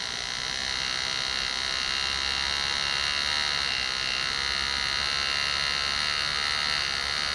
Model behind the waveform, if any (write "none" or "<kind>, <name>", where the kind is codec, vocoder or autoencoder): none